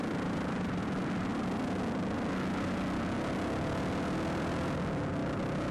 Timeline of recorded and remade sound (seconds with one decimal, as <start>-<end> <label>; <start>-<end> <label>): 0.0-5.7 recorded